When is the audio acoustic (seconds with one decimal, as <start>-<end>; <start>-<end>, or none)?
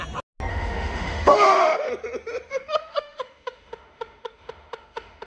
0.0-0.5; 1.9-2.5